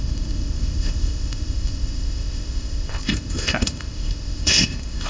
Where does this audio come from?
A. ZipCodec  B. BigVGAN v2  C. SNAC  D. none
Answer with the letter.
A